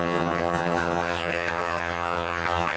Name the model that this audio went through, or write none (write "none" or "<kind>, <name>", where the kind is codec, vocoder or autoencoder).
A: vocoder, HiFi-GAN